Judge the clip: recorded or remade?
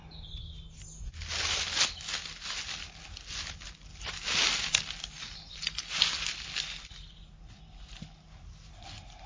recorded